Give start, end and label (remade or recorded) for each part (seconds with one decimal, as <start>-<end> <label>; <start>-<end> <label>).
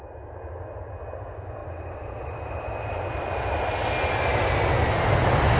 0.0-1.6 recorded; 1.6-3.2 remade; 3.2-5.6 recorded